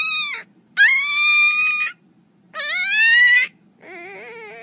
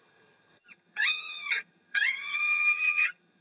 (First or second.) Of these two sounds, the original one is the first